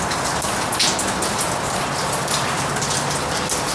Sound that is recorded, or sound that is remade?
recorded